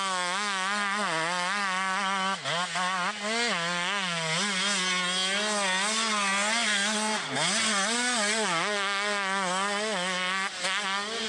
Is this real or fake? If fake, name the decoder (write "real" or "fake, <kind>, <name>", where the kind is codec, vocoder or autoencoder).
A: real